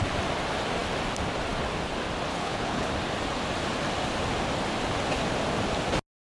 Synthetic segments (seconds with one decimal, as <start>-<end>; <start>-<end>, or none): 2.3-2.9